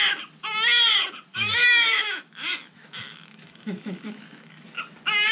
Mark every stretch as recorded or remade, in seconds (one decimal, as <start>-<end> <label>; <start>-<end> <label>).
0.0-1.3 recorded; 1.3-4.5 remade; 4.5-5.3 recorded